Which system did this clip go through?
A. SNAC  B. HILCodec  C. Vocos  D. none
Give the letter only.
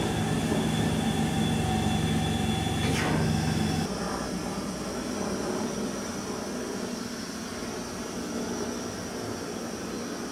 D